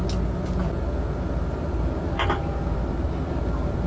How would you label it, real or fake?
real